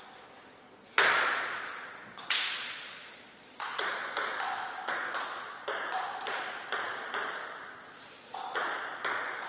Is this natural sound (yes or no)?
no